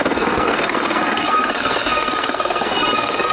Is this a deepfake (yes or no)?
yes